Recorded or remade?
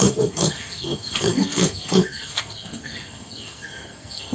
remade